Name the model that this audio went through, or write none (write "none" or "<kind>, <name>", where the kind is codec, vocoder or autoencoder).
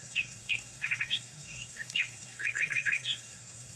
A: codec, SNAC